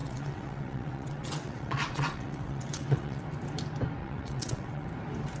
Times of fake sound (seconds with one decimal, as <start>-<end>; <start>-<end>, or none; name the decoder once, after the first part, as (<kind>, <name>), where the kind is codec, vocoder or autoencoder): 0.0-3.2 (vocoder, WaveNeXt); 4.0-4.9